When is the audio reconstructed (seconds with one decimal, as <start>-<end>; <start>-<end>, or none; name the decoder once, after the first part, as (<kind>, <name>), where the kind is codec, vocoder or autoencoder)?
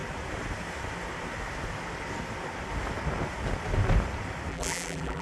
4.5-5.2 (vocoder, BigVGAN v2)